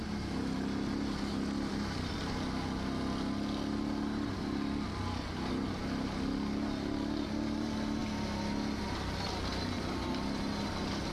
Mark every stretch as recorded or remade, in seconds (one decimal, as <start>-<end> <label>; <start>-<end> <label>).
0.0-11.1 recorded